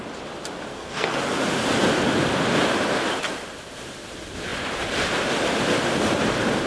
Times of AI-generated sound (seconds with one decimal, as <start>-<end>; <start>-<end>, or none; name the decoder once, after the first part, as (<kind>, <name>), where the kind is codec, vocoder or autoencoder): 0.7-1.2 (codec, SNAC)